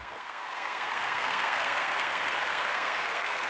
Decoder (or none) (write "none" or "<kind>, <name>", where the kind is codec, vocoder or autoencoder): codec, SNAC